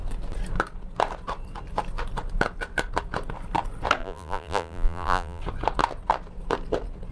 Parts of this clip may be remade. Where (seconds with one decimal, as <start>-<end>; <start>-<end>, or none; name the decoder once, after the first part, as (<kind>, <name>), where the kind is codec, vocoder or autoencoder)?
4.0-5.4 (vocoder, BigVGAN v2)